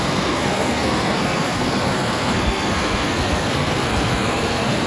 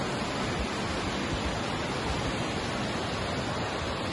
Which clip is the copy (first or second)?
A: first